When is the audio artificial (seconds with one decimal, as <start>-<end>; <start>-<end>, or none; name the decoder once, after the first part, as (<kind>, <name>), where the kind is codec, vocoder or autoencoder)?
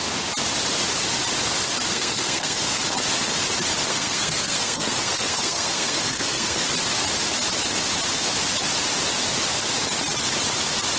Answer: 1.9-2.8 (codec, SNAC); 3.9-6.7